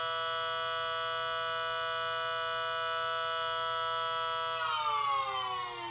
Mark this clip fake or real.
real